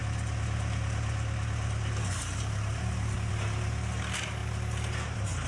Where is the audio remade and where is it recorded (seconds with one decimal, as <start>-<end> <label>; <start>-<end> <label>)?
0.0-5.5 recorded